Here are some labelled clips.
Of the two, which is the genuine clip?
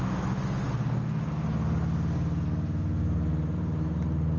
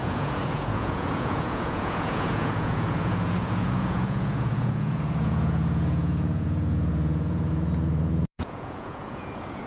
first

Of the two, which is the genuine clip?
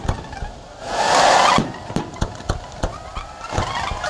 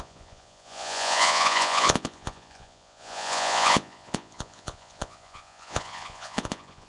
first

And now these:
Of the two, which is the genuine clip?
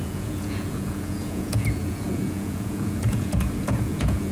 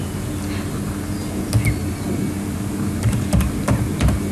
second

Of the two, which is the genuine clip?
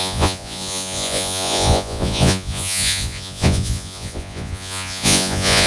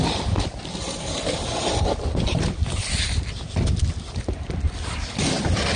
second